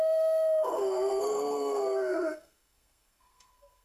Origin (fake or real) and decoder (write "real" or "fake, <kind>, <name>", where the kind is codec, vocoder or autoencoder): fake, codec, SNAC